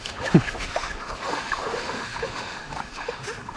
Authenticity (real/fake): fake